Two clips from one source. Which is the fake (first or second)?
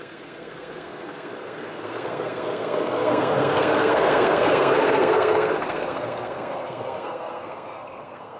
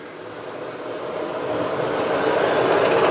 first